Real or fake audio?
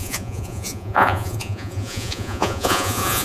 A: fake